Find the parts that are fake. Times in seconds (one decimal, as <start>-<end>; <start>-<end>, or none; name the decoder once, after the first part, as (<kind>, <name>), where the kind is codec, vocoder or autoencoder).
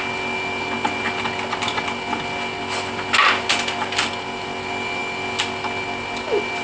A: none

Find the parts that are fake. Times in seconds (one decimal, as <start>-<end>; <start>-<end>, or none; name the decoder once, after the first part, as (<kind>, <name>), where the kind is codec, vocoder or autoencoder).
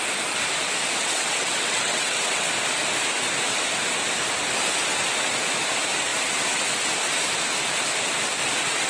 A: 1.0-2.5 (vocoder, WaveNeXt)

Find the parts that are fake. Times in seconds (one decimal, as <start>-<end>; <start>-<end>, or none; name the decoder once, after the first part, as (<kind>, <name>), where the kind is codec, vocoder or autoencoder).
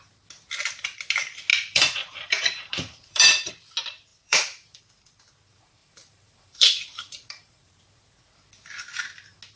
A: 1.5-3.5 (vocoder, BigVGAN v2); 4.1-4.8; 5.8-7.8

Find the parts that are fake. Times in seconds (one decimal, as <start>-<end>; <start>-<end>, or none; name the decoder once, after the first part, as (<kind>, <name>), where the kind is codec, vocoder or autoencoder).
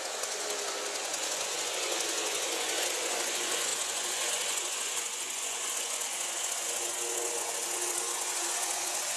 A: 0.0-9.2 (vocoder, Vocos)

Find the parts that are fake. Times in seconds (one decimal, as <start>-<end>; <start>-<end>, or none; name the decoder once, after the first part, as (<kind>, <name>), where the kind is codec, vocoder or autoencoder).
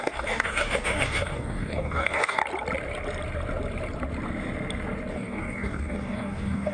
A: 0.0-2.4 (codec, DAC); 5.1-6.7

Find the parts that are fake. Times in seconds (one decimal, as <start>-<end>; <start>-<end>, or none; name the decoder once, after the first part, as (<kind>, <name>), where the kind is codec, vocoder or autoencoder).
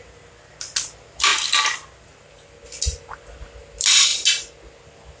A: none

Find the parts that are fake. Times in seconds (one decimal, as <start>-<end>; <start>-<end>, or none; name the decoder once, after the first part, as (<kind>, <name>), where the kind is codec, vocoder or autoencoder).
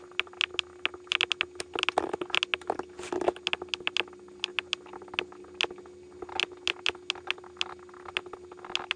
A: none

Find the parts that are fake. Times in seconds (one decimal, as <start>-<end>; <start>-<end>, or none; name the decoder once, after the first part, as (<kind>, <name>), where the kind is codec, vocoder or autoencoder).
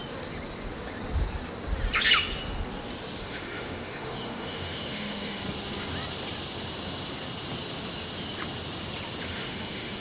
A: 3.2-5.4 (autoencoder, DAC-VAE); 9.3-10.0